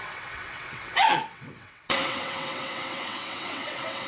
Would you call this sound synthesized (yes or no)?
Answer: yes